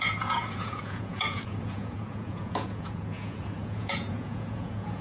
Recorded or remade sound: remade